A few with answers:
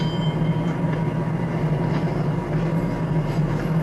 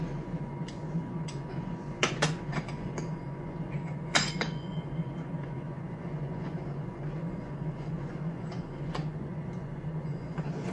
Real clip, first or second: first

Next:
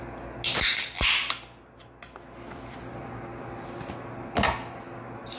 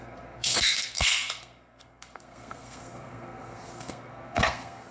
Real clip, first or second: first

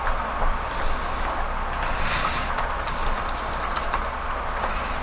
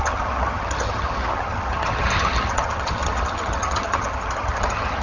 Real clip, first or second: first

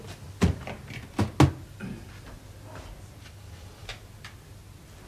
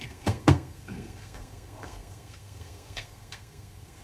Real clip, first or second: first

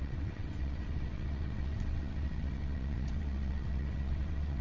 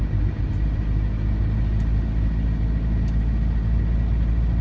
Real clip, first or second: second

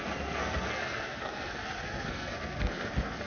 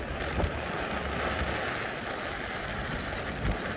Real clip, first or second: second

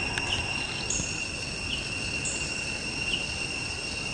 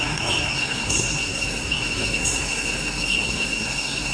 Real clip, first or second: first